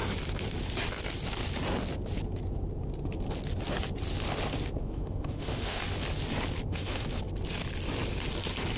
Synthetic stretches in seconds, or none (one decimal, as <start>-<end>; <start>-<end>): 4.8-5.8; 6.7-7.2